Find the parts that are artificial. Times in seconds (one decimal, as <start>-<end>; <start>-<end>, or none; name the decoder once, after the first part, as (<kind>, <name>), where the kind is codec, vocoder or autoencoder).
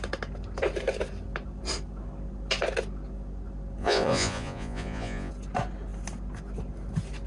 3.8-5.3 (vocoder, Vocos)